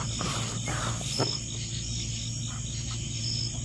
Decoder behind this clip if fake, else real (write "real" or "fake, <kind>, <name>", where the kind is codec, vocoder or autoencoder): real